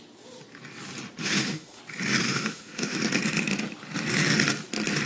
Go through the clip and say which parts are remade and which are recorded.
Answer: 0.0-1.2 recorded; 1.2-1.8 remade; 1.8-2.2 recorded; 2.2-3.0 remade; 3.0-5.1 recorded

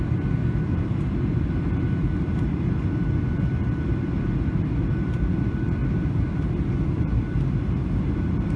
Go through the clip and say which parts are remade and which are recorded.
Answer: 0.0-0.4 remade; 0.4-4.2 recorded; 4.2-5.8 remade; 5.8-6.8 recorded; 6.8-8.6 remade

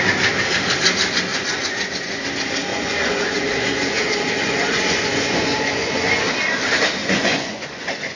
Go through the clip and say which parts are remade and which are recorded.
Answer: 0.0-1.3 recorded; 1.3-2.2 remade; 2.2-2.7 recorded; 2.7-6.2 remade; 6.2-7.0 recorded; 7.0-8.2 remade

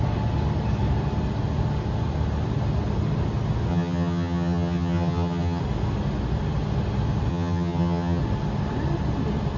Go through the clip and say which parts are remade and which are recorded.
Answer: 0.0-3.7 recorded; 3.7-5.6 remade; 5.6-7.3 recorded; 7.3-8.2 remade; 8.2-9.6 recorded

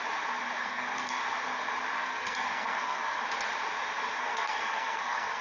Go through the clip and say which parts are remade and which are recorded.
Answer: 0.0-0.6 recorded; 0.6-1.2 remade; 1.2-1.9 recorded; 1.9-3.2 remade; 3.2-4.2 recorded; 4.2-5.4 remade